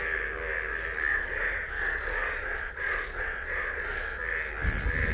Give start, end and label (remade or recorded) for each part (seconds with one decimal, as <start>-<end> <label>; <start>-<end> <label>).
0.0-1.1 recorded; 1.1-4.2 remade; 4.2-5.1 recorded